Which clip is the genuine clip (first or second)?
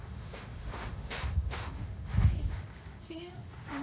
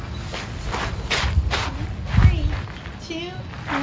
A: second